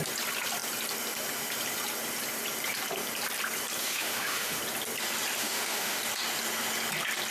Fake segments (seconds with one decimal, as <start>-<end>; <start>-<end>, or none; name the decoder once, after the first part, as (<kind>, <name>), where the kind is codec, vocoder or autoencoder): 3.8-4.6 (autoencoder, DAC-VAE); 5.4-6.0